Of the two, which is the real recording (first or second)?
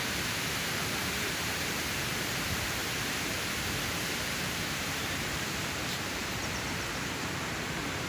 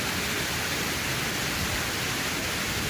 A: second